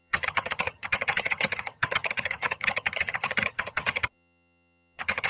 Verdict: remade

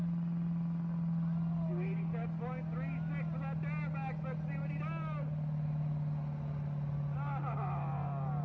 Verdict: recorded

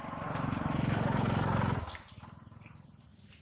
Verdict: recorded